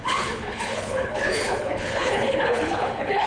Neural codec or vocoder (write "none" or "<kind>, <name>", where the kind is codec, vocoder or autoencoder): codec, HILCodec